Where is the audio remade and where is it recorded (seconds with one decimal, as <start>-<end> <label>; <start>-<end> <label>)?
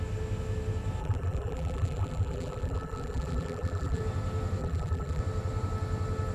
0.0-1.0 recorded; 1.0-4.0 remade; 4.0-4.6 recorded; 4.6-5.2 remade; 5.2-6.3 recorded